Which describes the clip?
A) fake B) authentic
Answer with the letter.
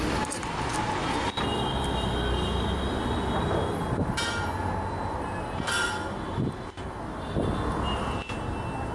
B